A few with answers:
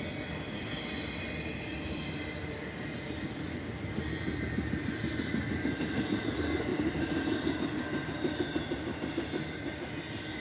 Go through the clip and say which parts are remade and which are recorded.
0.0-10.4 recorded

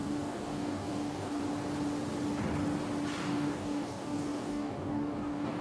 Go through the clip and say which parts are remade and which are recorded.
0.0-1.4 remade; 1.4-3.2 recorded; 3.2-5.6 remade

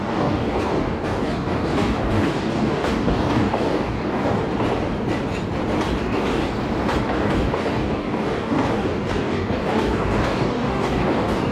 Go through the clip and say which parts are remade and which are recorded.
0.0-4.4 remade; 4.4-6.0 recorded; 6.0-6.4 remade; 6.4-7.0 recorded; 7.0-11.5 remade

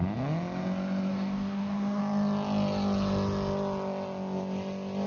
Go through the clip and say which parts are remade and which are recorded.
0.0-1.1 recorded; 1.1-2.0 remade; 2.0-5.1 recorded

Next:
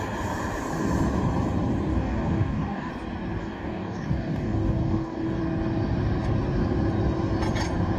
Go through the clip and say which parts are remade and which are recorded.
0.0-1.9 recorded; 1.9-2.9 remade; 2.9-3.4 recorded; 3.4-5.4 remade; 5.4-8.0 recorded

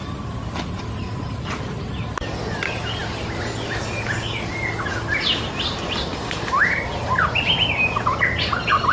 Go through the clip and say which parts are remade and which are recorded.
0.0-8.9 recorded